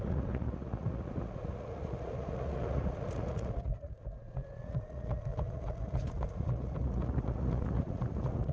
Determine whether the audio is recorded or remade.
remade